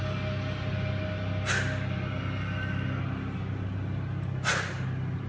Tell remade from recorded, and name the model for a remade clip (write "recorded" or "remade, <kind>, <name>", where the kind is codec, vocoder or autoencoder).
recorded